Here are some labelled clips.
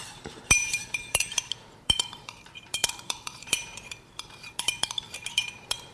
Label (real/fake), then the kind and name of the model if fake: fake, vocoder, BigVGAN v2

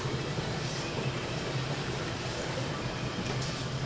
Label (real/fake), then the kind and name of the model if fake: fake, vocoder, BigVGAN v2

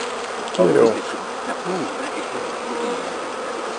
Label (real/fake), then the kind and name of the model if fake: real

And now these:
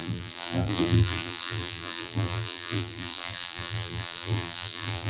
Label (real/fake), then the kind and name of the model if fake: fake, vocoder, BigVGAN v2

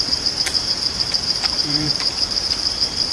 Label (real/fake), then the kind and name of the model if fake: fake, vocoder, BigVGAN v2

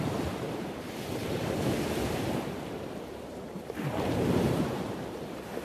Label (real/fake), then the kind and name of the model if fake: fake, vocoder, BigVGAN v2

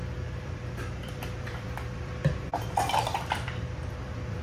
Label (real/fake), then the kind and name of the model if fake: fake, vocoder, BigVGAN v2